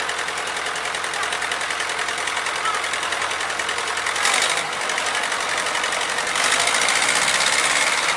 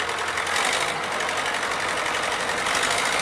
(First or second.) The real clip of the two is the second